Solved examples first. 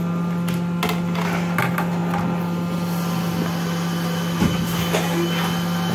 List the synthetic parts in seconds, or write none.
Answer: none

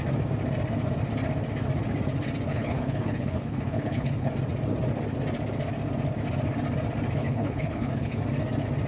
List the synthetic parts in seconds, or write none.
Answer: 2.5-4.3 (codec, HILCodec); 7.2-8.2

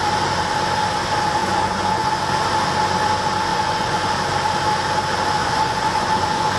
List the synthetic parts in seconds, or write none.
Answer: 1.4-2.2 (vocoder, Vocos); 3.5-4.1; 5.4-6.6

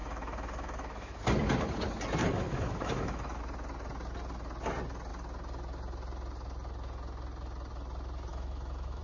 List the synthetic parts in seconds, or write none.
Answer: 0.0-1.2 (autoencoder, DAC-VAE); 2.2-3.4; 8.3-9.0

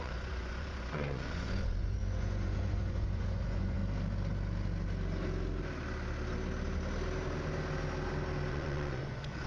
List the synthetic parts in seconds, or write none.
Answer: 0.0-3.8 (vocoder, Vocos); 8.5-9.5

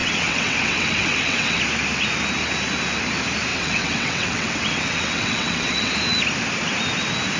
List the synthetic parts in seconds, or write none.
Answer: 0.0-1.6 (vocoder, WaveNeXt); 3.5-5.9

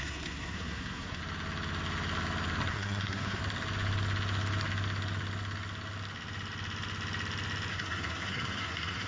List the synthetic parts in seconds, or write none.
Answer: 0.0-1.2 (codec, SNAC); 2.7-3.4; 7.7-9.1

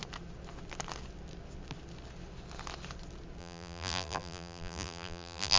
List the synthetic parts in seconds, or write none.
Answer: 3.4-5.6 (vocoder, BigVGAN v2)